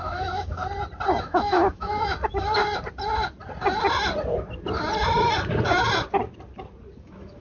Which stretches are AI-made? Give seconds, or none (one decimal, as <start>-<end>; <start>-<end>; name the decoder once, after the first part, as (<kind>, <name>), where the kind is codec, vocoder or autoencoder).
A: 0.0-0.6 (autoencoder, DAC-VAE); 1.2-2.6; 7.0-7.4

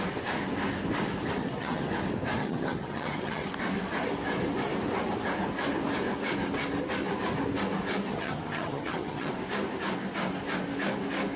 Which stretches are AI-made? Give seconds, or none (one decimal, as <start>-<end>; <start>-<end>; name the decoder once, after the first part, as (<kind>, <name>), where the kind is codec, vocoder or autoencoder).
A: 1.4-1.9 (vocoder, HiFi-GAN); 2.4-3.5; 8.1-9.3

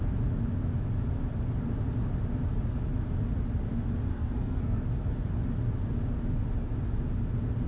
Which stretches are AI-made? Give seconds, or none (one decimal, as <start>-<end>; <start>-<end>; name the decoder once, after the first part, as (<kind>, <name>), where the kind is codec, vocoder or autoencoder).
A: 4.1-4.8 (codec, SNAC)

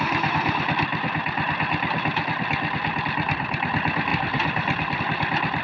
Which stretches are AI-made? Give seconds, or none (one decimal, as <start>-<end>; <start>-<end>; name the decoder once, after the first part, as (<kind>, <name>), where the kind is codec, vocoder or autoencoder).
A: 0.0-0.9 (vocoder, BigVGAN v2); 3.0-5.6

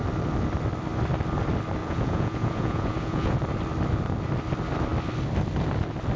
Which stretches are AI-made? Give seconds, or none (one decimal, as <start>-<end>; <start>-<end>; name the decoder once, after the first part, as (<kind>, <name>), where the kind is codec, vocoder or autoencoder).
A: 1.8-3.4 (vocoder, Vocos)

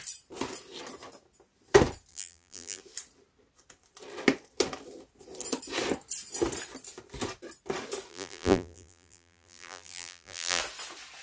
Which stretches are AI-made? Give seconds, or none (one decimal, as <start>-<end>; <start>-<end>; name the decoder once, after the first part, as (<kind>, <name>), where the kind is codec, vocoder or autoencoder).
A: 2.1-2.8 (vocoder, BigVGAN v2); 8.1-10.6

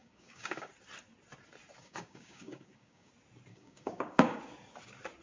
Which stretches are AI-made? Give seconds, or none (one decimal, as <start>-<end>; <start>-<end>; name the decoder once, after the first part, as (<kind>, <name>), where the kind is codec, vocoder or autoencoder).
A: 0.0-0.7 (codec, DAC); 1.8-3.1; 3.5-4.4

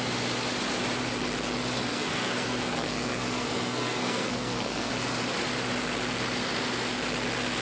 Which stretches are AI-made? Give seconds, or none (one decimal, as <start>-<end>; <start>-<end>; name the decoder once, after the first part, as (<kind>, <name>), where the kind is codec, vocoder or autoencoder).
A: 1.9-4.9 (codec, SNAC)